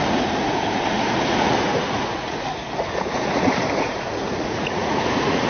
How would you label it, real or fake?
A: fake